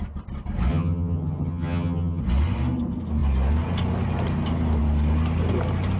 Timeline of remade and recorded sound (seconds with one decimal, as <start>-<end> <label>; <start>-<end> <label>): 0.0-0.7 recorded; 0.7-2.2 remade; 2.2-6.0 recorded